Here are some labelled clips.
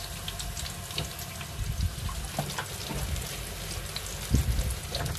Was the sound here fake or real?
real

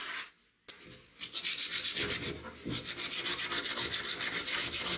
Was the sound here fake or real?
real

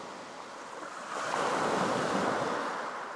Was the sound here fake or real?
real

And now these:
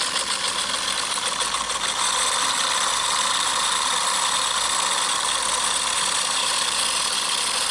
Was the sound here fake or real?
real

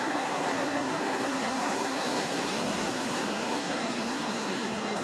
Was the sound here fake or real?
fake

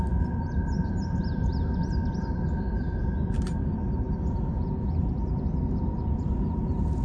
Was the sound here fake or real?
real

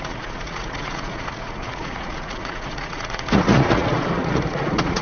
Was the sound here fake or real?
fake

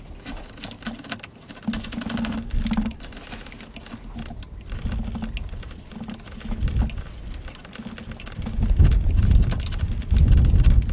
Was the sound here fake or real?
real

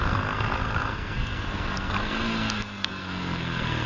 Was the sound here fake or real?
fake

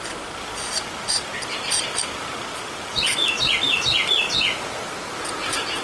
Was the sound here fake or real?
real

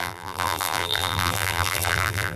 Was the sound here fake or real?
fake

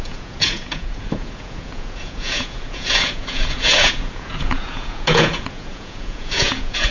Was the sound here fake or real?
fake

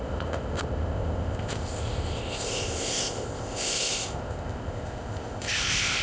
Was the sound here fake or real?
fake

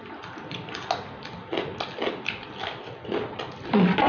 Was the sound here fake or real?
real